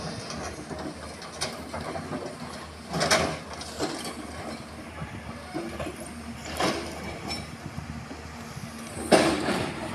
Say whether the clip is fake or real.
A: real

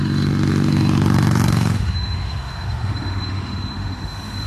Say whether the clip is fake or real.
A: fake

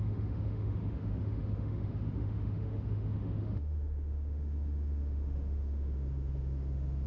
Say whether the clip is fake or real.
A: fake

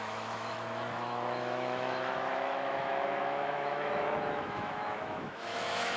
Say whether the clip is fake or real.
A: fake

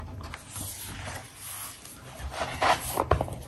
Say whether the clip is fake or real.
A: real